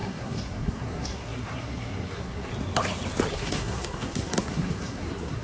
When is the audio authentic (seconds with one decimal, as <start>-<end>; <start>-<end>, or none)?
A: 2.5-3.3